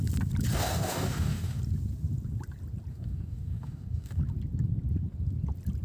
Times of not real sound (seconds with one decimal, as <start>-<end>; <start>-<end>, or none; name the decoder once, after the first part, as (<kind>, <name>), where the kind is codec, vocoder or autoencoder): 0.5-1.6 (codec, DAC); 2.9-4.2